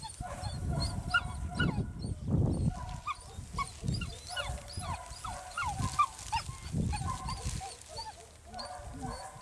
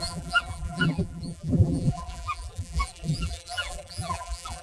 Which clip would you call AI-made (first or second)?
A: second